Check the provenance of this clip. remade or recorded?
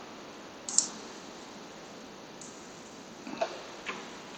recorded